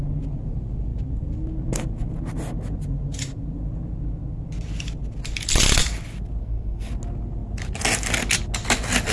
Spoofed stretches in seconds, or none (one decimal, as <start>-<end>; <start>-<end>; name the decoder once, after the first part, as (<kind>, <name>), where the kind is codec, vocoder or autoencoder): 6.4-6.9 (codec, SNAC)